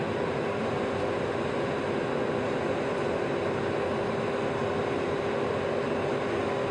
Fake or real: real